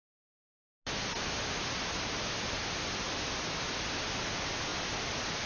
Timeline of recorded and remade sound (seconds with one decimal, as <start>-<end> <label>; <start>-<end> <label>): 0.0-5.5 recorded